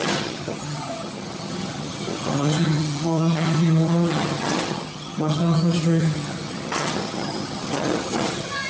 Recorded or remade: remade